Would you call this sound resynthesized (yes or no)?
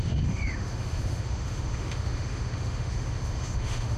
yes